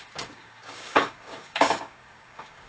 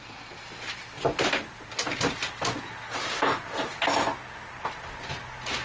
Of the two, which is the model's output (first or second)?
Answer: first